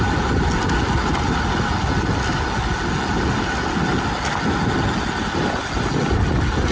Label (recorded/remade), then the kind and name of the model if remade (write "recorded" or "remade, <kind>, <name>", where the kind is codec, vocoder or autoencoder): recorded